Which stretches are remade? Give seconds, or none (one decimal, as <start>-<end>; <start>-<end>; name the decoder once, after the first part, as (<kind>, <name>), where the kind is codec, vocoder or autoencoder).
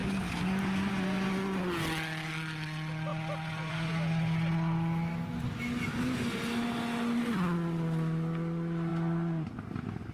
0.0-0.9 (codec, DAC)